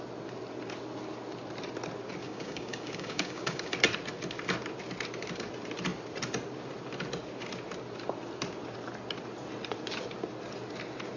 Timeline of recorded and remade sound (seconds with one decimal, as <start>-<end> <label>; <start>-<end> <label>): 0.0-2.2 recorded; 2.2-3.7 remade; 3.7-11.2 recorded

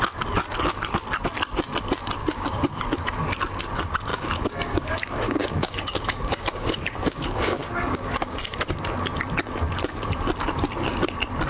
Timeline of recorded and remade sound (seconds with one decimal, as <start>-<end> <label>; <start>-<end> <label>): 0.0-2.2 recorded; 2.2-2.8 remade; 2.8-4.1 recorded; 4.1-8.4 remade; 8.4-11.5 recorded

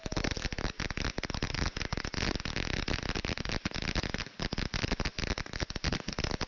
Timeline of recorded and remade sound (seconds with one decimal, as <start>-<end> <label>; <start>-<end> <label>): 0.0-6.5 recorded

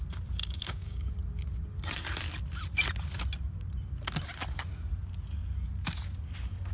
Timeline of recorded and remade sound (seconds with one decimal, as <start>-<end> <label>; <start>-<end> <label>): 0.0-0.4 recorded; 0.4-1.1 remade; 1.1-6.7 recorded

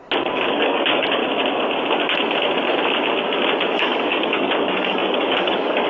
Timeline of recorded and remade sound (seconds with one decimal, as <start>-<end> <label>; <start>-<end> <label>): 0.0-0.5 recorded; 0.5-1.2 remade; 1.2-3.7 recorded; 3.7-5.9 remade

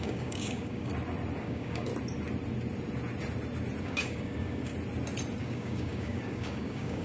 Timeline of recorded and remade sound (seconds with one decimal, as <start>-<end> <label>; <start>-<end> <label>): 0.0-0.9 remade; 0.9-1.4 recorded; 1.4-1.9 remade; 1.9-3.8 recorded; 3.8-4.7 remade; 4.7-5.4 recorded; 5.4-7.0 remade